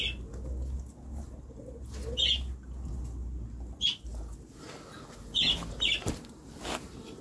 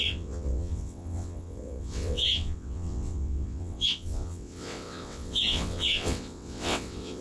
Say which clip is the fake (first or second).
second